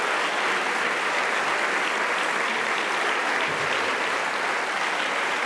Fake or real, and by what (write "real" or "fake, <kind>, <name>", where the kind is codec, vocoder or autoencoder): real